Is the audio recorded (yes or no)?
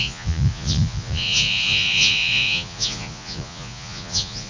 no